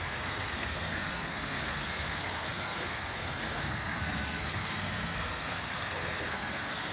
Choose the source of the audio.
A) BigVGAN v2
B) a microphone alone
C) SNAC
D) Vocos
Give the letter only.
C